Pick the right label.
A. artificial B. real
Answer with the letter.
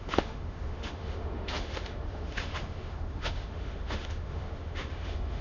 A